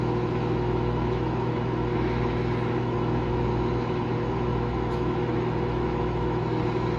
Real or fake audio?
fake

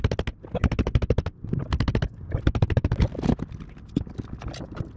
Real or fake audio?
real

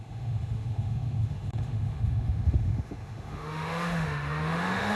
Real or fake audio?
fake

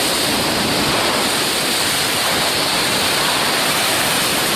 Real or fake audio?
real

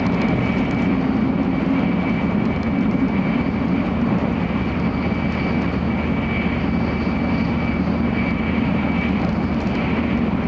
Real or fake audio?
real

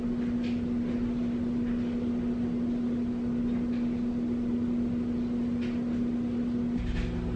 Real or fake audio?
real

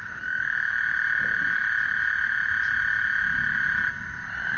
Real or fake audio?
real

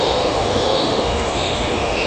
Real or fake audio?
fake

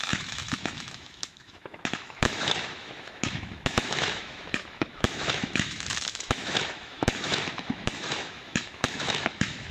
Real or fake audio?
fake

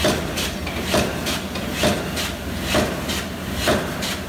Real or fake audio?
real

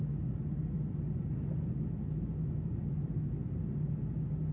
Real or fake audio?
real